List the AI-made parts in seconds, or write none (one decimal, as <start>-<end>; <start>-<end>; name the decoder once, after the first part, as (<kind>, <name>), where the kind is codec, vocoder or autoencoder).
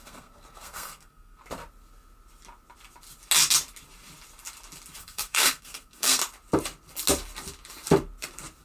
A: 0.0-1.4 (codec, SNAC); 5.0-6.2